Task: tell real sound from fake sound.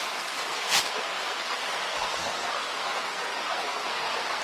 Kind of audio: fake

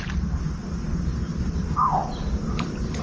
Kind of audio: real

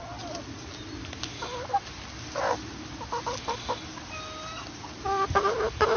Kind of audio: real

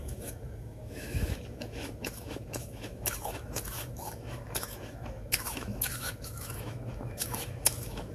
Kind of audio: fake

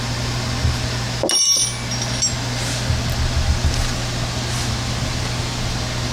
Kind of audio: real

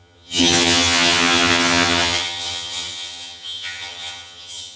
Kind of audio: fake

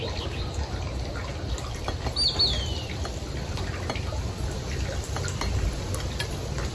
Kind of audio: real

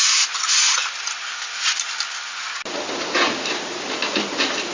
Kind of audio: real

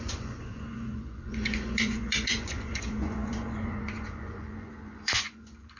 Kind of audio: fake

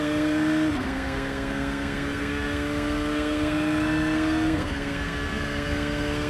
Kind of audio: fake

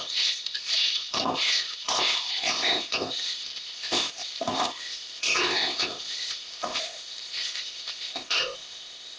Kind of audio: fake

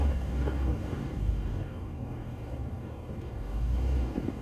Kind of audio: fake